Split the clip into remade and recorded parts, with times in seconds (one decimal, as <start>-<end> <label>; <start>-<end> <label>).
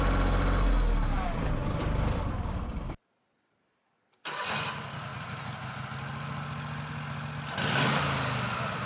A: 0.0-1.6 recorded; 1.6-2.2 remade; 2.2-8.9 recorded